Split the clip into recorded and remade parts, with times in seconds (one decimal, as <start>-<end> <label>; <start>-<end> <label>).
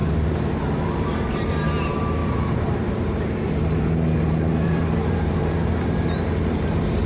0.0-1.5 remade; 1.5-2.2 recorded; 2.2-5.5 remade; 5.5-7.1 recorded